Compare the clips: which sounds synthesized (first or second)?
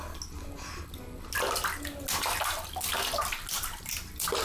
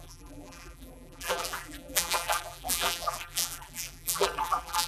second